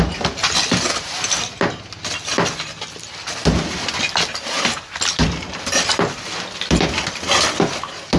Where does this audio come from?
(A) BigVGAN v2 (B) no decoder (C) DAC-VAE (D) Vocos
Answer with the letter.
B